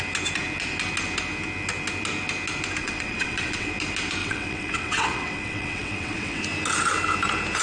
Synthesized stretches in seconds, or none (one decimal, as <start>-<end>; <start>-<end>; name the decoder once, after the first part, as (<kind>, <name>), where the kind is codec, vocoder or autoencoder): 2.8-3.7 (vocoder, WaveNeXt); 4.2-6.4